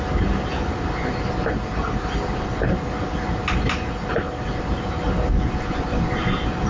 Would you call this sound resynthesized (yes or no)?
no